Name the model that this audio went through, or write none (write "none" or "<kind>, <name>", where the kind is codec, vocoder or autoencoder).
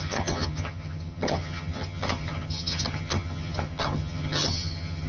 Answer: vocoder, HiFi-GAN